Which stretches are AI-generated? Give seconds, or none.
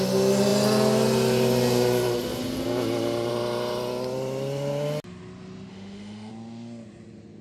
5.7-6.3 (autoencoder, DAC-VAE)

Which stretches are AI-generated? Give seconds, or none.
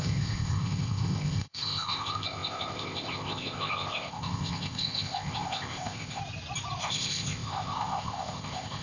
0.0-6.2 (codec, ZipCodec); 6.8-8.8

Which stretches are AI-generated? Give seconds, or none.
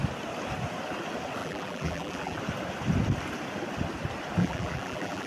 1.4-2.4 (vocoder, BigVGAN v2); 4.4-5.3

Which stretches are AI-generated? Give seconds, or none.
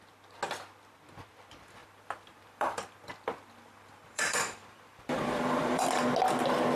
1.8-5.9 (vocoder, BigVGAN v2)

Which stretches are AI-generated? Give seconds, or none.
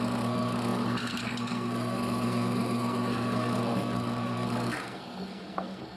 0.0-6.0 (codec, SNAC)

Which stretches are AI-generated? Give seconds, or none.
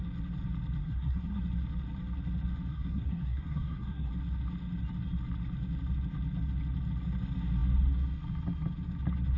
0.8-1.4 (codec, SNAC); 2.7-4.1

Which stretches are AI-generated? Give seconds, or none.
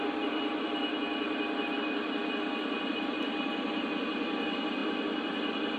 0.0-0.8 (vocoder, BigVGAN v2); 2.9-5.8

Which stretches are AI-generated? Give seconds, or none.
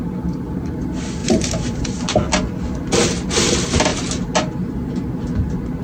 1.2-1.8 (vocoder, BigVGAN v2)